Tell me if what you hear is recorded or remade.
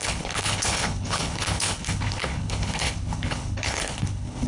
remade